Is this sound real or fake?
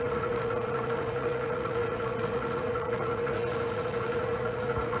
fake